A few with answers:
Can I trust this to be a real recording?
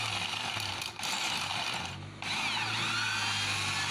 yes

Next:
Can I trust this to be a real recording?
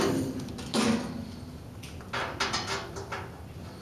yes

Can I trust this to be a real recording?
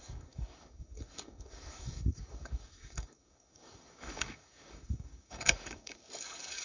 no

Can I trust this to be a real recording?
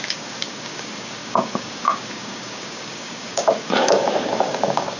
no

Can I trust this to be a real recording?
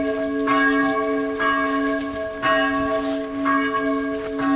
yes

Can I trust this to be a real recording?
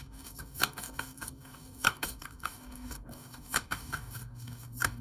no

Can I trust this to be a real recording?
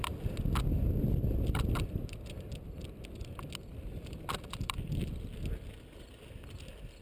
yes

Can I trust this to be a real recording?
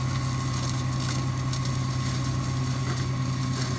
yes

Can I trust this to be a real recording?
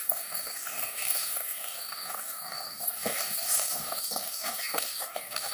no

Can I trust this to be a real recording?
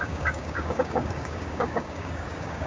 no